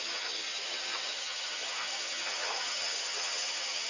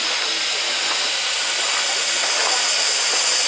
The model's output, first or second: first